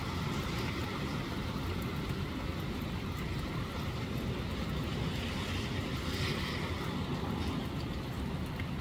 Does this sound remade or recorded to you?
recorded